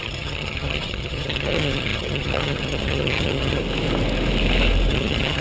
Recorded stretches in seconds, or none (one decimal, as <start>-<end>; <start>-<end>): 3.6-4.9